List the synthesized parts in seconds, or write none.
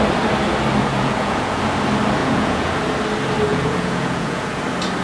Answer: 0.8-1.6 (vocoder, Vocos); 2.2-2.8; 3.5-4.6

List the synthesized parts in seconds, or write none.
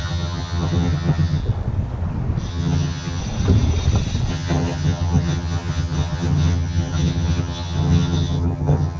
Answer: 0.0-1.4 (vocoder, HiFi-GAN); 2.5-3.2; 4.3-9.0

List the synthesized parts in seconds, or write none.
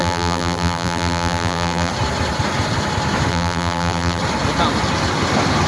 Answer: 0.0-1.9 (vocoder, BigVGAN v2); 3.3-4.2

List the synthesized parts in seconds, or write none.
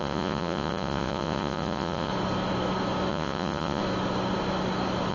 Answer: 0.0-2.1 (vocoder, Vocos); 3.1-3.8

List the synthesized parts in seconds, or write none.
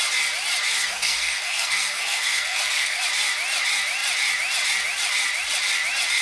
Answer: 0.8-3.0 (codec, SNAC)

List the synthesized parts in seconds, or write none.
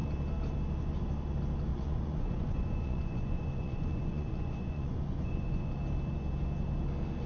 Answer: 1.7-5.8 (vocoder, Vocos)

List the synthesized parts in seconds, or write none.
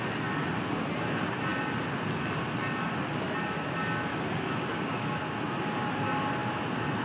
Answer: 4.1-5.2 (codec, DAC)